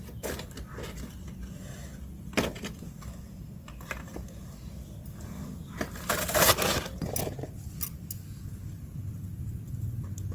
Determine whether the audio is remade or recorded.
recorded